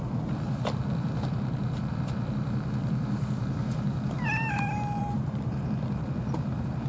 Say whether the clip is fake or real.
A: fake